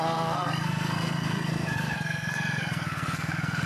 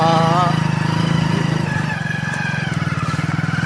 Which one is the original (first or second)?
second